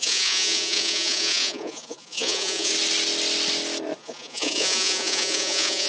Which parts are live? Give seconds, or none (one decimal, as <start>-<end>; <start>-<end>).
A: 2.7-4.0